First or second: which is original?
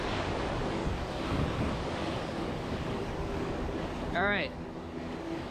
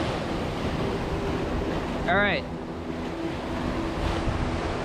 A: second